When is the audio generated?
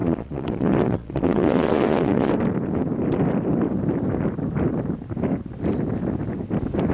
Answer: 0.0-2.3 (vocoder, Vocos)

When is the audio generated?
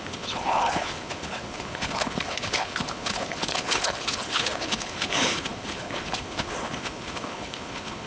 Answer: 0.0-8.1 (codec, HILCodec)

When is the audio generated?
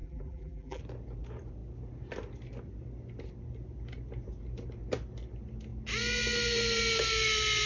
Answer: 0.0-0.8 (vocoder, BigVGAN v2)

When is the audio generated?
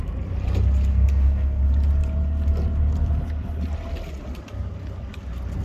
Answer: 0.9-1.6 (codec, SNAC)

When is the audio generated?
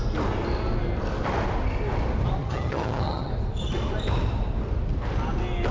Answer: 2.4-3.3 (vocoder, HiFi-GAN)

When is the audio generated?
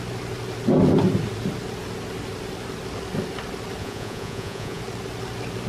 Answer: 3.8-4.8 (vocoder, Vocos)